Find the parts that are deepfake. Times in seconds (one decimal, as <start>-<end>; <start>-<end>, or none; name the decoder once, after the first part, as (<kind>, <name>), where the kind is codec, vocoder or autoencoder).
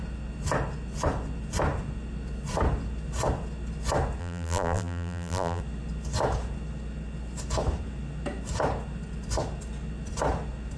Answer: 4.2-5.6 (vocoder, BigVGAN v2)